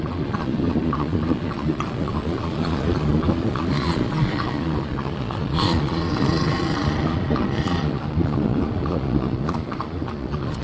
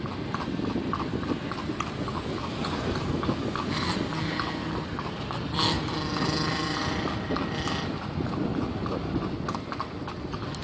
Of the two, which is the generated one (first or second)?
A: first